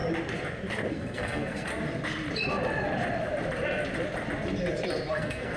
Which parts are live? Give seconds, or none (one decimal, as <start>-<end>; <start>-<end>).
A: 0.0-0.9; 1.7-5.1